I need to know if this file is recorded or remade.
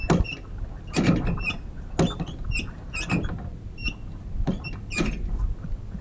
recorded